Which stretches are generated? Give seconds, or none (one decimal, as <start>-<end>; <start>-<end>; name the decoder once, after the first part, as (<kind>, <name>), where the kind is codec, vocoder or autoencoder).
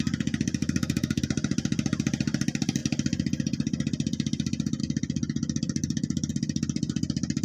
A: 0.6-1.2 (autoencoder, DAC-VAE)